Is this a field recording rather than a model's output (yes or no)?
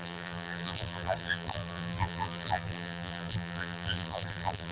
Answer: no